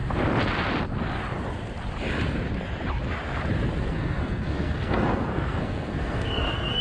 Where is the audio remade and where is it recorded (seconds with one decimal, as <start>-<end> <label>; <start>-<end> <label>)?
0.0-3.8 recorded; 3.8-6.8 remade